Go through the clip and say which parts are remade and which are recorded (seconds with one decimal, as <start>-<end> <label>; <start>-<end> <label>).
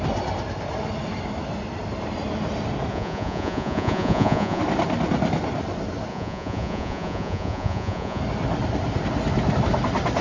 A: 0.0-2.9 recorded; 2.9-4.6 remade; 4.6-6.1 recorded; 6.1-8.2 remade; 8.2-10.2 recorded